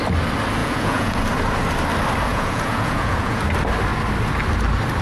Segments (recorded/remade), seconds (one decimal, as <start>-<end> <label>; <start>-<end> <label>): 0.0-0.6 recorded; 0.6-1.2 remade; 1.2-2.3 recorded; 2.3-3.4 remade; 3.4-5.0 recorded